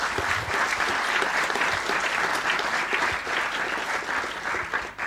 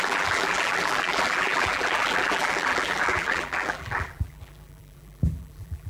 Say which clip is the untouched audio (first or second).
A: first